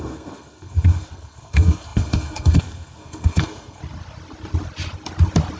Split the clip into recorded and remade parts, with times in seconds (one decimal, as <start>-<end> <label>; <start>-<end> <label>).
0.0-3.8 remade; 3.8-5.6 recorded